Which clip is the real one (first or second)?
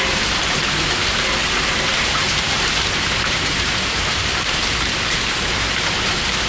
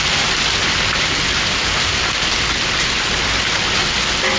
second